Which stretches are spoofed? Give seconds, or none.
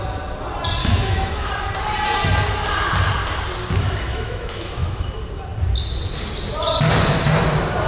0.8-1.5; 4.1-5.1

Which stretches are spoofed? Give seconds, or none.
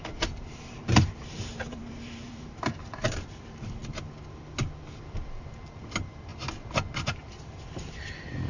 0.0-3.8; 5.7-6.3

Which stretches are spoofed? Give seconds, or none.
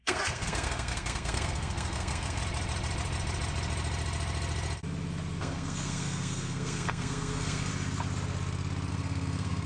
0.0-2.4; 5.4-7.7; 8.9-9.7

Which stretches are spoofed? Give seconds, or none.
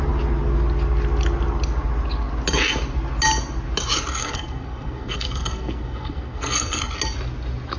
4.2-6.8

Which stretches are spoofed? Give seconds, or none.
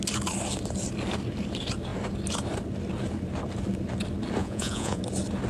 4.4-5.0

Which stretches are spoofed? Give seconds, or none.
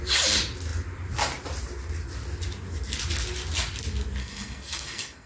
4.2-5.3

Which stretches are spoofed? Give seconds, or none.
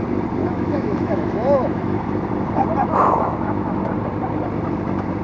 0.4-2.0; 2.8-3.8